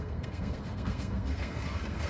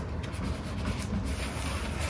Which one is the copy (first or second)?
first